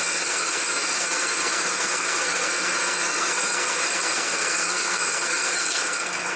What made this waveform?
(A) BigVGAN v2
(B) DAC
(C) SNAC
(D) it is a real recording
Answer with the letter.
C